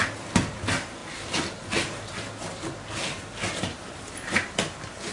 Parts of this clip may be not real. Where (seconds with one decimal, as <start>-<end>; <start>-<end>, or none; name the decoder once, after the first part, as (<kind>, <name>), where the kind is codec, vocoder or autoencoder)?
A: none